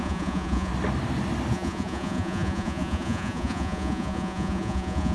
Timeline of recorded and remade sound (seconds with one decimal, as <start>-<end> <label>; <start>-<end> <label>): 0.0-0.7 remade; 0.7-1.5 recorded; 1.5-5.1 remade

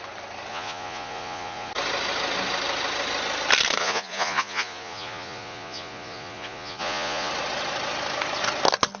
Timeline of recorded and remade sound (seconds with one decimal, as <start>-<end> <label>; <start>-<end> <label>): 0.0-0.5 recorded; 0.5-1.7 remade; 1.7-3.8 recorded; 3.8-7.3 remade; 7.3-9.0 recorded

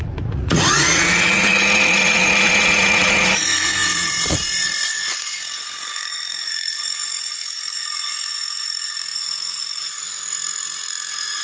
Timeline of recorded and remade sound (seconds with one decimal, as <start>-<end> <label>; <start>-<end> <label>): 0.0-11.4 remade

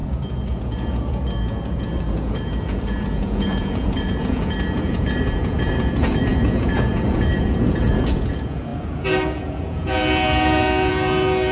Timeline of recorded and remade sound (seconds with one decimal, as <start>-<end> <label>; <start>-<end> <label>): 0.0-11.5 remade

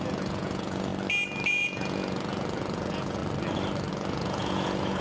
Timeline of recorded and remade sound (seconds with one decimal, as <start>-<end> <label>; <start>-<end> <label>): 0.0-0.9 remade; 0.9-1.5 recorded; 1.5-3.2 remade; 3.2-3.9 recorded; 3.9-5.0 remade

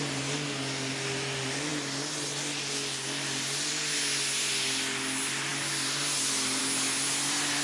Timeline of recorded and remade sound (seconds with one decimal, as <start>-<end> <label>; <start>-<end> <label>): 0.0-7.6 recorded

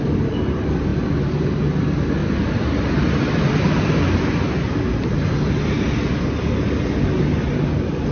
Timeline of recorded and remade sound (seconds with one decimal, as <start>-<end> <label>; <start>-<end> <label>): 0.0-8.1 recorded

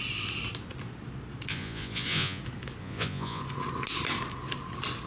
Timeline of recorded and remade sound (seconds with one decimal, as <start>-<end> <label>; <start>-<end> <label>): 0.0-1.5 recorded; 1.5-2.4 remade; 2.4-2.8 recorded; 2.8-3.4 remade; 3.4-5.1 recorded